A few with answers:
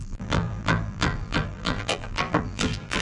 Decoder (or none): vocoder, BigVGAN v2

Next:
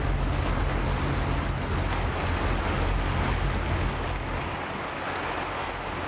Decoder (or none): none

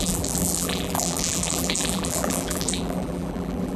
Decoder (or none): vocoder, BigVGAN v2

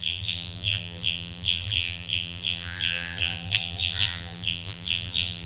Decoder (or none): vocoder, BigVGAN v2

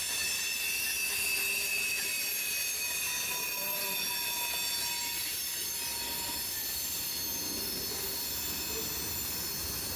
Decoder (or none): none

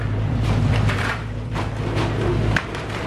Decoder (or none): vocoder, BigVGAN v2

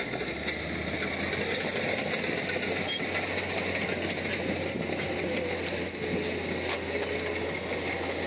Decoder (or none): none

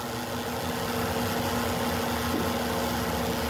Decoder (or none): none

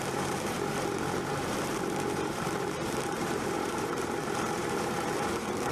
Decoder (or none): vocoder, BigVGAN v2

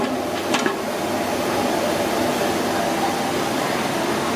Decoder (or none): none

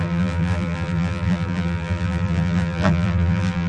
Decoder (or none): vocoder, BigVGAN v2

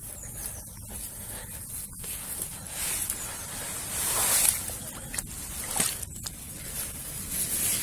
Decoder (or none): none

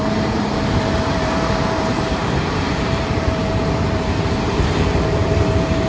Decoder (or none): vocoder, BigVGAN v2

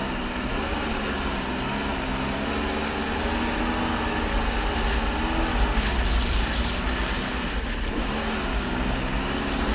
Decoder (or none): none